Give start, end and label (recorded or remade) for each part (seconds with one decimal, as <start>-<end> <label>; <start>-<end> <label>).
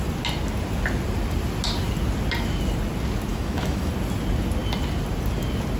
0.0-3.3 recorded; 3.3-3.9 remade; 3.9-5.8 recorded